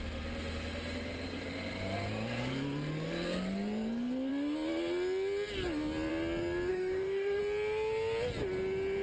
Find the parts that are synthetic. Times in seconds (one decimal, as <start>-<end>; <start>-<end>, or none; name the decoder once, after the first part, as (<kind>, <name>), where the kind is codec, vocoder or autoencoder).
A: 6.7-7.4 (codec, DAC)